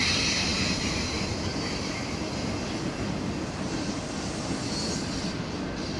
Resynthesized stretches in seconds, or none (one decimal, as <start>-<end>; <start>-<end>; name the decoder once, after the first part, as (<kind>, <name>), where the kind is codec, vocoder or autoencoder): none